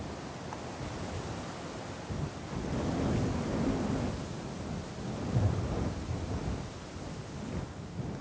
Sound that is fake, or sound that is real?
real